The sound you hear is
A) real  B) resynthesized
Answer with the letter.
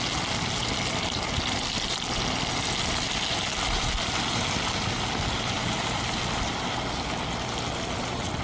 A